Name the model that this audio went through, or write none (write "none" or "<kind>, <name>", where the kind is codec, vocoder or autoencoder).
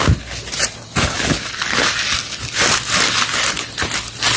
none